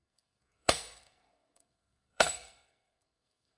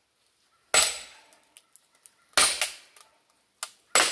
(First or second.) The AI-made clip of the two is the first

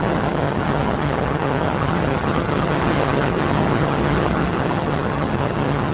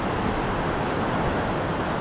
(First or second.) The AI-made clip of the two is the first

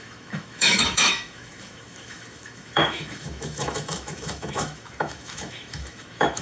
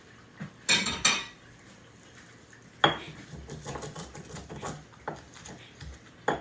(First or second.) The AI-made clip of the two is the first